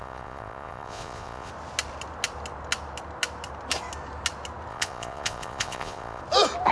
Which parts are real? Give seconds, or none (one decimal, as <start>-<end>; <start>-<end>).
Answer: 1.5-4.7; 6.2-6.7